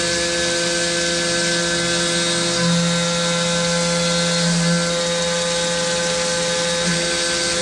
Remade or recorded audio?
recorded